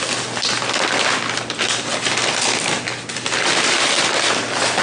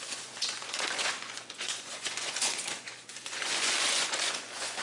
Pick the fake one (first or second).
second